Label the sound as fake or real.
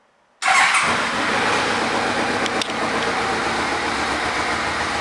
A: real